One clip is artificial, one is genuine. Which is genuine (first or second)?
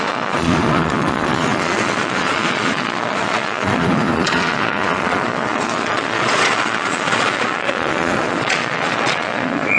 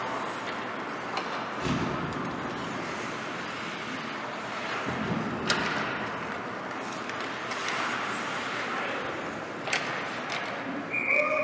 second